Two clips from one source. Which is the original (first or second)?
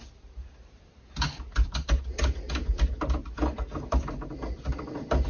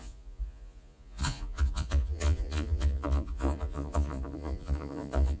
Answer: first